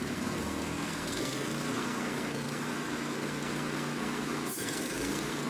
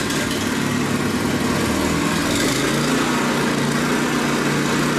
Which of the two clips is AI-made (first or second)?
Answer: first